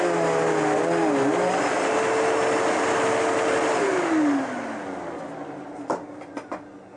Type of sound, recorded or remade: recorded